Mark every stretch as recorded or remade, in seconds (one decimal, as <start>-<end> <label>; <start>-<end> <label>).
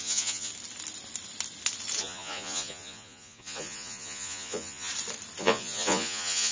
0.0-0.5 remade; 0.5-2.0 recorded; 2.0-4.9 remade; 4.9-5.4 recorded; 5.4-6.5 remade